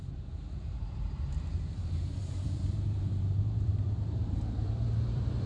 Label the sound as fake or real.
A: fake